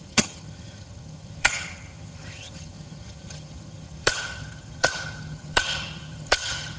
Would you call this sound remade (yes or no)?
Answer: yes